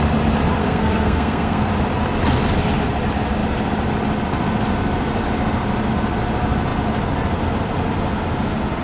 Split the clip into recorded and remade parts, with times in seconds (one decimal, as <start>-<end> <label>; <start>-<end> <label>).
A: 0.0-0.6 recorded; 0.6-1.7 remade; 1.7-8.8 recorded